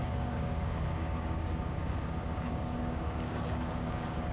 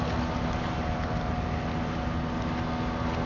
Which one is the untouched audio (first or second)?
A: second